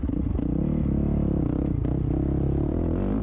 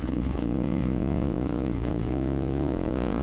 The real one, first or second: first